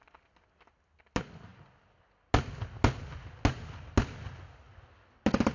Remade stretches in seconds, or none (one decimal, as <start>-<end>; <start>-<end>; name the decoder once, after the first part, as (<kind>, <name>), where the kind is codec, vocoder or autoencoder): none